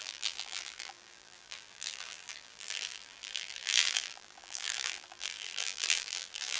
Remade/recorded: remade